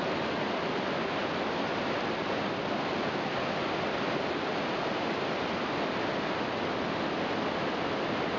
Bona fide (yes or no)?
yes